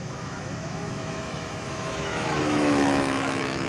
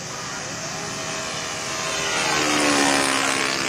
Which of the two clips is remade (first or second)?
first